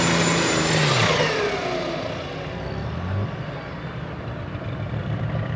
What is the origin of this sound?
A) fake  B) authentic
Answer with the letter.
B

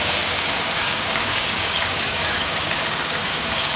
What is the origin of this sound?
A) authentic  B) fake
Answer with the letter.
B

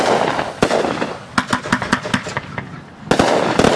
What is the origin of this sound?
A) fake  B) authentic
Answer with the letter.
B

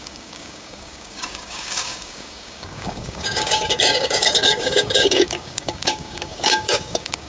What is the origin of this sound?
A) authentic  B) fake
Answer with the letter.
B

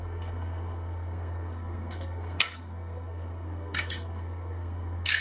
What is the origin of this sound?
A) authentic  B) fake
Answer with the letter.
B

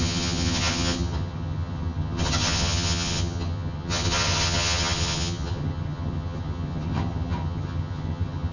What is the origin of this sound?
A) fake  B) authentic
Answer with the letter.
A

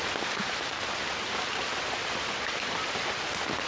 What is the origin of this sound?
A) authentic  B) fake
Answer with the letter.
A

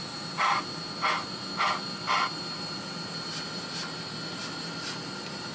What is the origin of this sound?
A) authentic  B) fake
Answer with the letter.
A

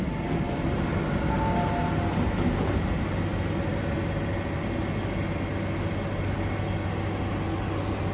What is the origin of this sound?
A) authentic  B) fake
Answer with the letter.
A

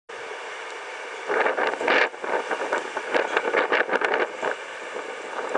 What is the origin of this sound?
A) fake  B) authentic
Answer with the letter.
B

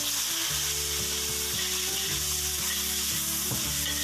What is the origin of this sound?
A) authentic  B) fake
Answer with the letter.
A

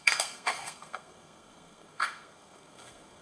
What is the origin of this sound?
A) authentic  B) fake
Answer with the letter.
B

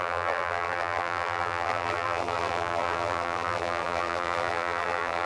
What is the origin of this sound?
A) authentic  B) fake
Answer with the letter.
B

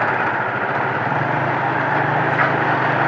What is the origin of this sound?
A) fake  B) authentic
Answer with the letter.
B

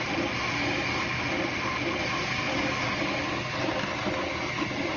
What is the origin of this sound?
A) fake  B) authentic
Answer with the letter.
B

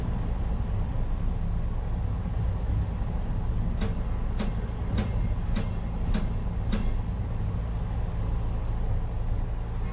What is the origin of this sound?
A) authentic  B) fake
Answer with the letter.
A